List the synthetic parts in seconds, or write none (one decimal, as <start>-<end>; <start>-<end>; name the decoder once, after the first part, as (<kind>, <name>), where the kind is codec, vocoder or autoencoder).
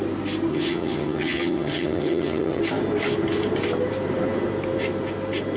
0.5-2.6 (vocoder, HiFi-GAN)